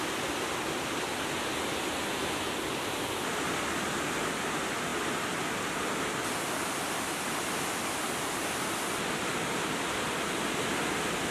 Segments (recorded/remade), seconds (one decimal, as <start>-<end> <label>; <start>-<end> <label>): 0.0-11.3 recorded

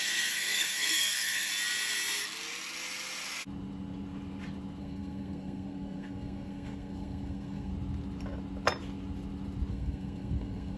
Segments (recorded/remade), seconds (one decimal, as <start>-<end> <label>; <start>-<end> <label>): 0.0-1.5 remade; 1.5-4.8 recorded; 4.8-7.7 remade; 7.7-9.7 recorded; 9.7-10.8 remade